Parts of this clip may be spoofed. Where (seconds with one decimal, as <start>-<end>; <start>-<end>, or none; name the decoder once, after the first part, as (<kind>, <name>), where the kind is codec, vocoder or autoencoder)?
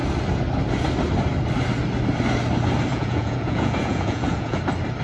2.9-4.6 (vocoder, Vocos)